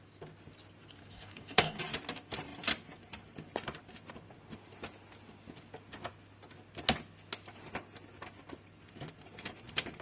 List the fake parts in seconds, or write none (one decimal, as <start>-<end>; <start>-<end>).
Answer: 1.0-1.8